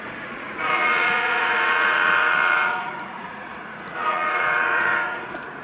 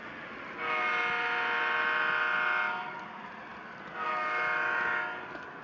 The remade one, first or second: first